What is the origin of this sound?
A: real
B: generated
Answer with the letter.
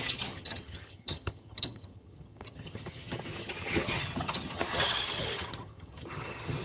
B